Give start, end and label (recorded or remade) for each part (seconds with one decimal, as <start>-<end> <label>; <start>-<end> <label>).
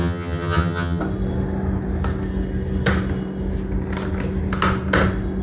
0.0-1.0 remade; 1.0-5.4 recorded